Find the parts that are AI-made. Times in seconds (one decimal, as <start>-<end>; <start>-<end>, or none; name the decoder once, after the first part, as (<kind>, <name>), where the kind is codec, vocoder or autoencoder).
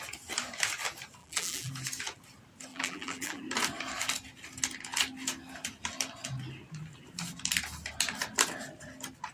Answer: 1.2-1.7 (vocoder, BigVGAN v2); 2.7-3.4